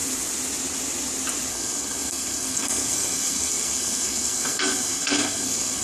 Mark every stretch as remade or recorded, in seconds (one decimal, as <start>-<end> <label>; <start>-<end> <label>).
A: 0.0-1.5 recorded; 1.5-5.8 remade